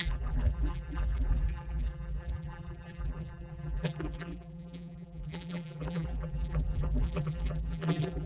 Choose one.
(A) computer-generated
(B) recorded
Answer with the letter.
A